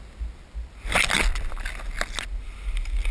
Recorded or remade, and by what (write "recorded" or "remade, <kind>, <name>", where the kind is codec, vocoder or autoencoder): recorded